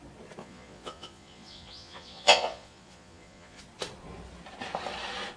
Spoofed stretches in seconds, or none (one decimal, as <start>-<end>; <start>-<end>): 0.4-3.6